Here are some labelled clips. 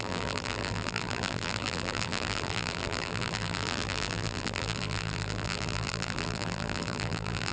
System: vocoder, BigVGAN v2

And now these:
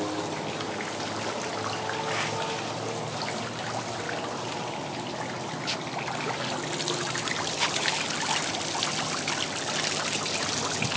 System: none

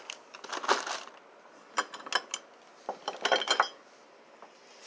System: none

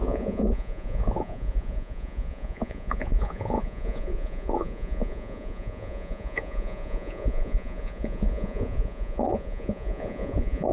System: vocoder, Vocos